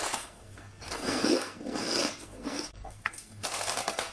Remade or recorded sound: remade